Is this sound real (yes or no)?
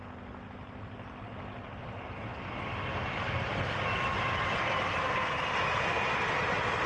yes